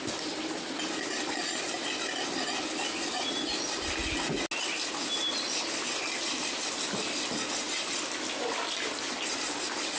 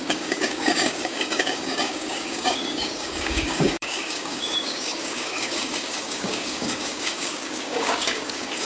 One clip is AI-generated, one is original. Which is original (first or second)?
first